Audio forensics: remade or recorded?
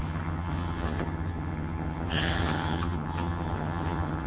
remade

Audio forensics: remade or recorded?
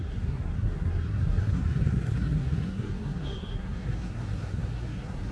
remade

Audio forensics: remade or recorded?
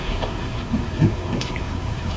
remade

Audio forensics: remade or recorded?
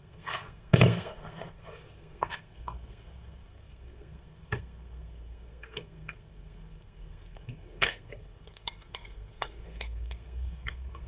remade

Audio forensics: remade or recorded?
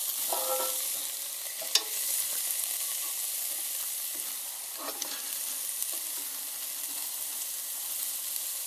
recorded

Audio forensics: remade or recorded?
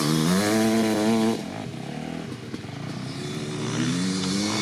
recorded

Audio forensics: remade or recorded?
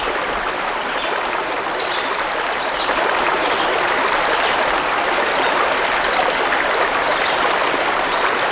recorded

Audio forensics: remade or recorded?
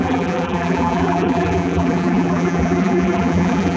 remade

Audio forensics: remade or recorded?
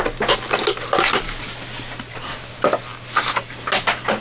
recorded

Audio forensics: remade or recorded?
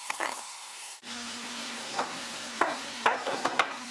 remade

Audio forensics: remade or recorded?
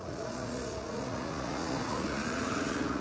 remade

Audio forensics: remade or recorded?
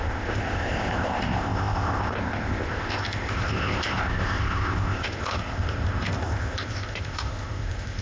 remade